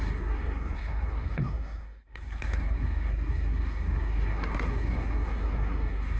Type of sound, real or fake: fake